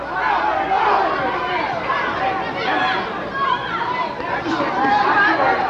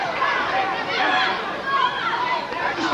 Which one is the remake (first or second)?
second